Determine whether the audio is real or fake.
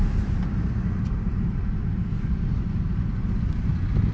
real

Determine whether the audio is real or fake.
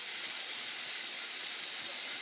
real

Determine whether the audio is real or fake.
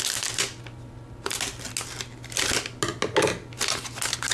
real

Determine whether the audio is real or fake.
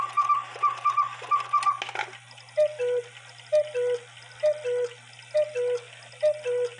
real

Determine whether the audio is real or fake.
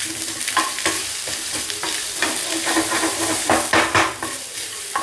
fake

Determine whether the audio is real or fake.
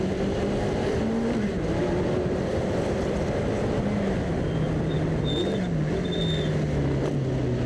real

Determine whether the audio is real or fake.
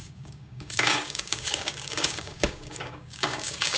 fake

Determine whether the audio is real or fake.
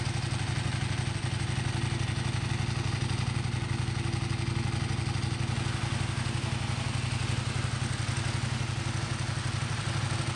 real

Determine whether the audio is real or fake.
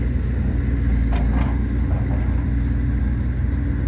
real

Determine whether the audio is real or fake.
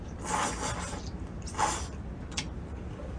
real